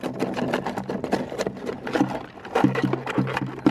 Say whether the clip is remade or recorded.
recorded